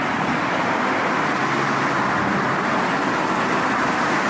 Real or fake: real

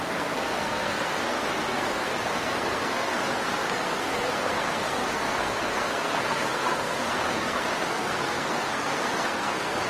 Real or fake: fake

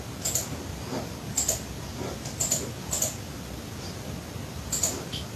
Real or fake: real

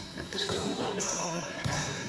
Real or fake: fake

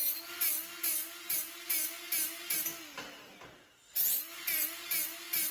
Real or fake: real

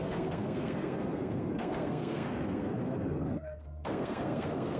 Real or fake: fake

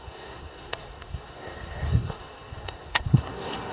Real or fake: fake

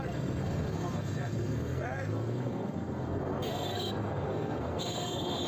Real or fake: fake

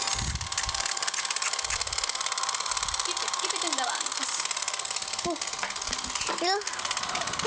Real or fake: real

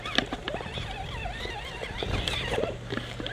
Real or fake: real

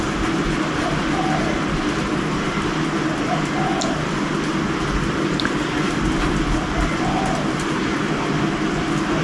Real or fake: real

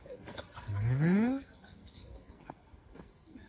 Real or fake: fake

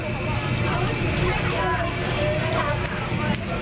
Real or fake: real